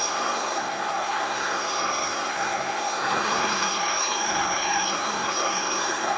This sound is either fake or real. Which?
fake